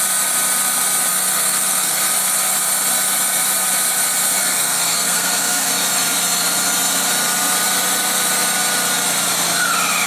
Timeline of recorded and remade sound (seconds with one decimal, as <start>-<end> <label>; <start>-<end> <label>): 0.0-1.1 recorded; 1.1-2.1 remade; 2.1-4.4 recorded; 4.4-5.7 remade; 5.7-10.1 recorded